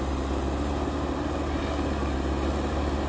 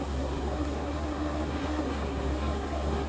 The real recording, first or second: first